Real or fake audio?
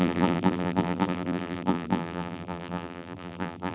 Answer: fake